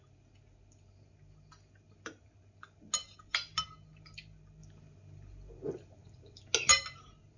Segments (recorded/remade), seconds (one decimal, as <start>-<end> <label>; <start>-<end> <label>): 0.0-7.4 recorded